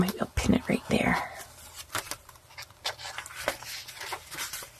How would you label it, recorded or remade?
recorded